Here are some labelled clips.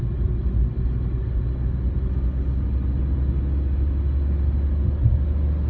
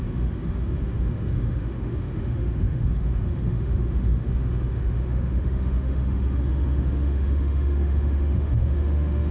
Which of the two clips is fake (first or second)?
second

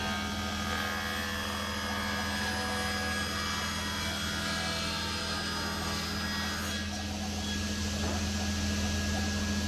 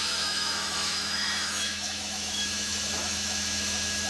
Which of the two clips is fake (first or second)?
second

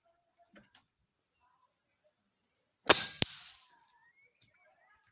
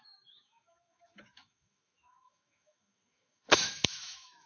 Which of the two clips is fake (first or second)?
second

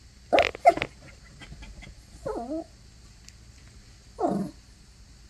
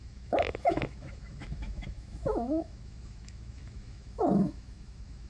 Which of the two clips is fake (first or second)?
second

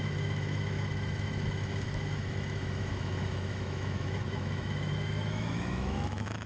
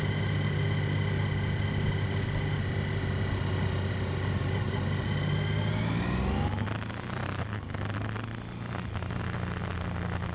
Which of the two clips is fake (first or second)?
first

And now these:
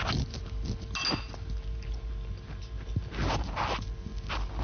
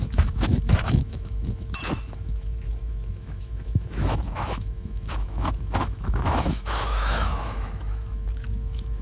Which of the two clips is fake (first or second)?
second